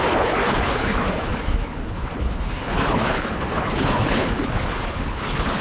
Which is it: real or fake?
fake